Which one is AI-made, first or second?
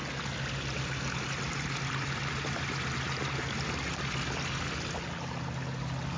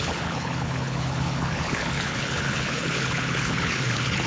second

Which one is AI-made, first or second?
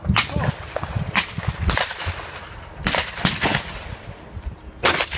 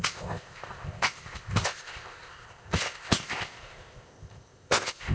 second